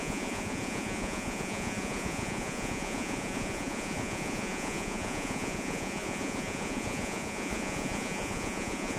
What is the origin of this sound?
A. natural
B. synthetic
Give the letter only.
B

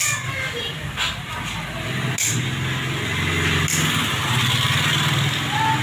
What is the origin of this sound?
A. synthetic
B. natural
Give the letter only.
B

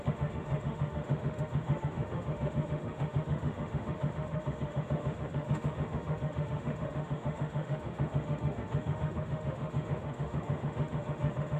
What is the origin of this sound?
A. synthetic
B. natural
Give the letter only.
A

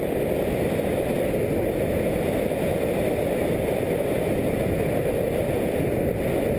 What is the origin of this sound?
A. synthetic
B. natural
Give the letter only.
B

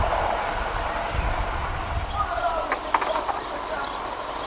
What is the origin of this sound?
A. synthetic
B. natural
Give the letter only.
B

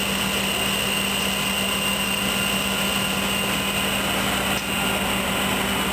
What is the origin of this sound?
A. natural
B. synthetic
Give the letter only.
A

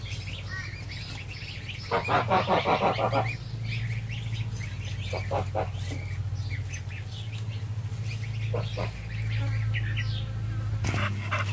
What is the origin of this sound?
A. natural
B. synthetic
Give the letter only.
A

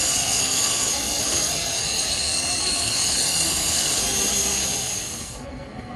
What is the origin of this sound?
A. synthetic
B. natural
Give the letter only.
A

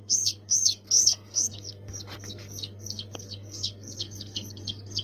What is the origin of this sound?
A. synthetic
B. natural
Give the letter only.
A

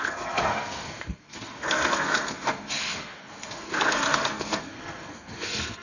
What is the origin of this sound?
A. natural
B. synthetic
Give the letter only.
B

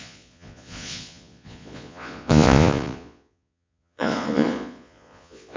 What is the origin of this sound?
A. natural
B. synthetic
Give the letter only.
B